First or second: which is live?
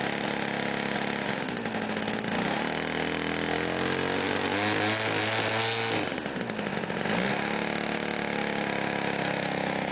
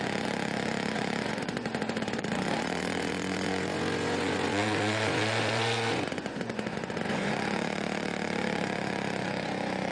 first